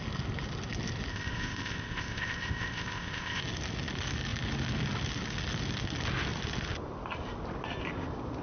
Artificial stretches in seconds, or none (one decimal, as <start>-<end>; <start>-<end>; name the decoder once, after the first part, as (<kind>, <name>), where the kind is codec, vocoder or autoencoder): 1.1-3.4 (codec, ZipCodec)